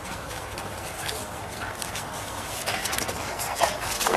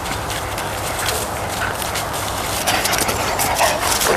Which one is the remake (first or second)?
first